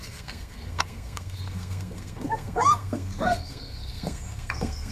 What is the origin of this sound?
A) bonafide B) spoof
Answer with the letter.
B